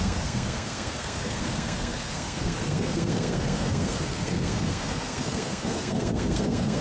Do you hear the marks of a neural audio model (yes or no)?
yes